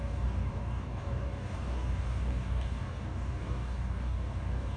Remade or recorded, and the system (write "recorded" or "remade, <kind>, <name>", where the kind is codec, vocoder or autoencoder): remade, codec, DAC